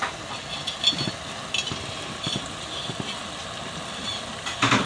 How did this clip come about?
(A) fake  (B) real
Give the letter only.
B